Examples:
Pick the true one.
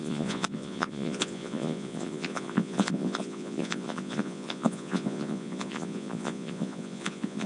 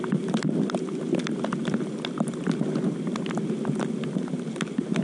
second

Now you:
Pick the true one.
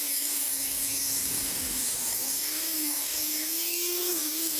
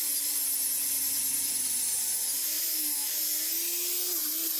second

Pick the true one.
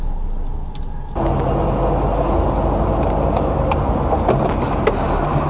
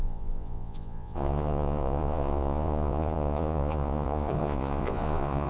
first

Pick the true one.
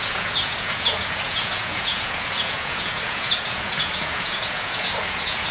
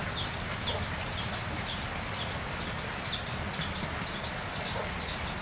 second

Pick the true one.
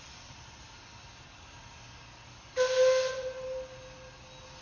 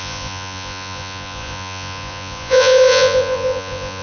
first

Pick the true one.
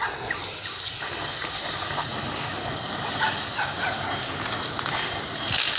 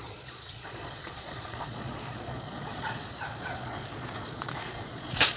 first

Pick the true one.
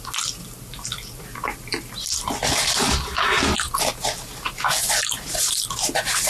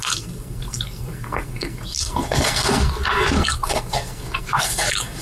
first